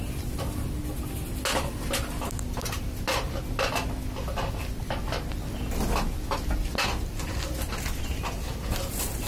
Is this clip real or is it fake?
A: real